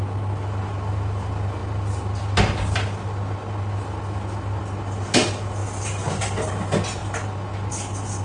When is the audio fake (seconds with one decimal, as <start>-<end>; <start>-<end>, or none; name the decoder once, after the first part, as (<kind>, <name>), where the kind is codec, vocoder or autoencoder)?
none